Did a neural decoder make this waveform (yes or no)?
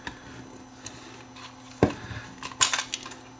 no